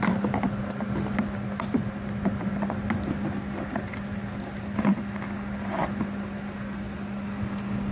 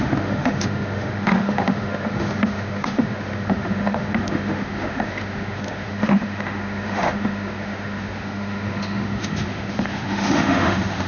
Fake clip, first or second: second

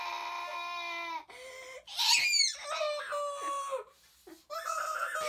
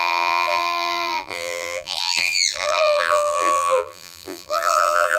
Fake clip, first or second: second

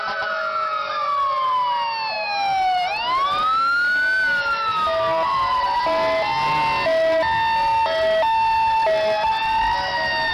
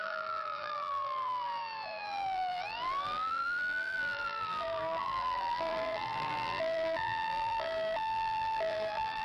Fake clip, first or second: second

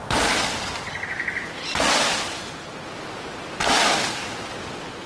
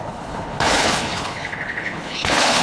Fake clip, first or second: second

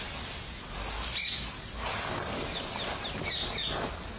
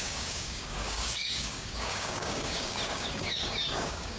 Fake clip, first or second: second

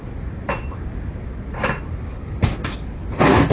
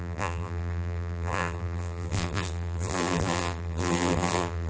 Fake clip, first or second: second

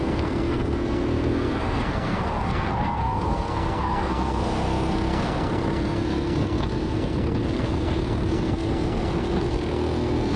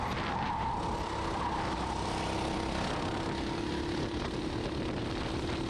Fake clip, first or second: first